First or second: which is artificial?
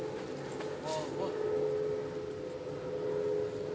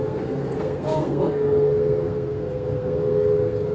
second